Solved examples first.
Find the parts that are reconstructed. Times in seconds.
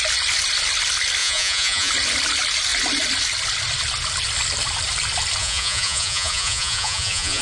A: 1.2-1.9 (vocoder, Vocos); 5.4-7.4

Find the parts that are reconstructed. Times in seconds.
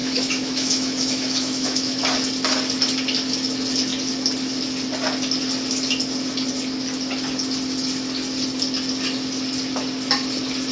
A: 0.0-2.0 (autoencoder, DAC-VAE)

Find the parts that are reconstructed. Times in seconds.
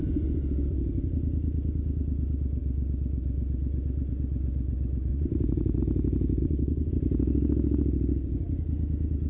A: 5.1-5.8 (vocoder, Vocos); 6.4-6.9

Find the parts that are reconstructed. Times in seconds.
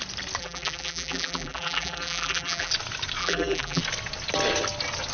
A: 0.4-2.7 (vocoder, BigVGAN v2); 3.2-3.8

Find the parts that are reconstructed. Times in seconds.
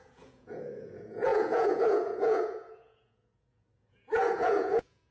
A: 0.0-5.1 (vocoder, Vocos)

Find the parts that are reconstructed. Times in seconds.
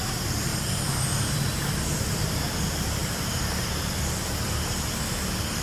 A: 0.5-2.6 (vocoder, BigVGAN v2); 3.0-3.9